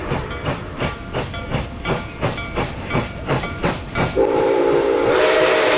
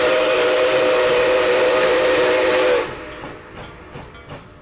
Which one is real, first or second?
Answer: second